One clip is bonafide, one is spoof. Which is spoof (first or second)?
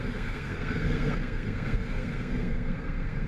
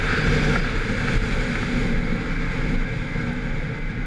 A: first